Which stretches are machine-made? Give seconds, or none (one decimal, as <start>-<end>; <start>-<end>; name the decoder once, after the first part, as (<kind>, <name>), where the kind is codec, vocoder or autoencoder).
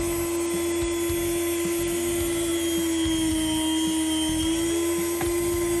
none